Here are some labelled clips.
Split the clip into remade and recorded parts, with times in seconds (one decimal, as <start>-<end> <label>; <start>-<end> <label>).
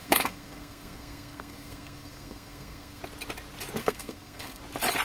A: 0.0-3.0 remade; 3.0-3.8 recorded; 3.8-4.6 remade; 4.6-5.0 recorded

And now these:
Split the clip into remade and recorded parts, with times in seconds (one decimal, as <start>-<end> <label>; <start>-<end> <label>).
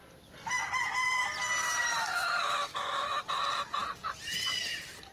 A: 0.0-1.9 recorded; 1.9-3.2 remade; 3.2-5.1 recorded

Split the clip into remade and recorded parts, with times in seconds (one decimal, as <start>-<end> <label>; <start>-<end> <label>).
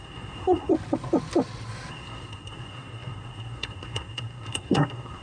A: 0.0-0.7 remade; 0.7-1.9 recorded; 1.9-5.2 remade